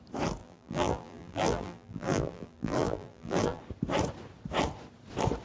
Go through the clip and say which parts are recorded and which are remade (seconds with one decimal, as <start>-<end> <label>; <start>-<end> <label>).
0.0-0.4 recorded; 0.4-3.6 remade; 3.6-5.4 recorded